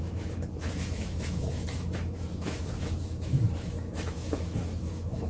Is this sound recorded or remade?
remade